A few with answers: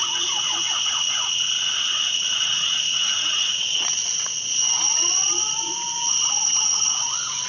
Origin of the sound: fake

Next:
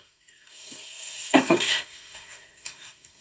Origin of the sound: fake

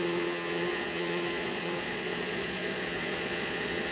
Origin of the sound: fake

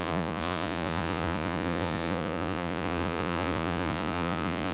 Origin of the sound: fake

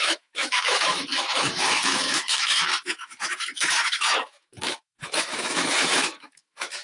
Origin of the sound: fake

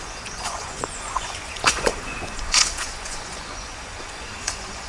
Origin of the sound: fake